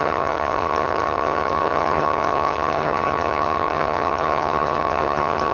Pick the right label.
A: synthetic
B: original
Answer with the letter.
A